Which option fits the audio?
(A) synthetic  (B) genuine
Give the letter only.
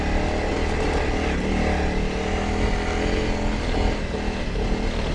B